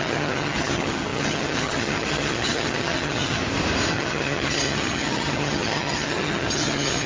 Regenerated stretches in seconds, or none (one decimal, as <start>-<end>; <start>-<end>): 0.0-3.4; 3.9-7.1